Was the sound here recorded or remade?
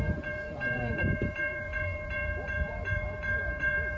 remade